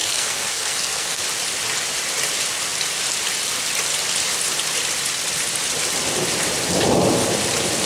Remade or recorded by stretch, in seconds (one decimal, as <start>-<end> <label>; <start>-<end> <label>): 0.0-1.2 remade; 1.2-7.9 recorded